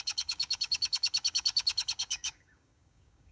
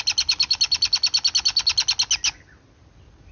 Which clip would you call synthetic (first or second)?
first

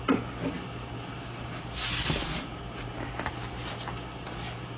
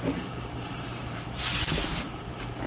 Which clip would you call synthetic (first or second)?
second